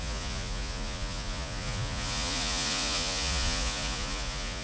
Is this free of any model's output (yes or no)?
no